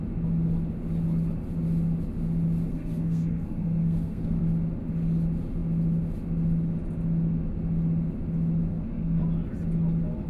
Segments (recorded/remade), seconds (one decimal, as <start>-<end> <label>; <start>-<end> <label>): 0.0-2.7 recorded; 2.7-4.4 remade; 4.4-8.7 recorded; 8.7-9.2 remade; 9.2-10.3 recorded